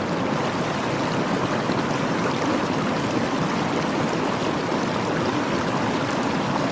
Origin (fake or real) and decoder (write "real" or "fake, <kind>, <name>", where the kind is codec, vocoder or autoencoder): real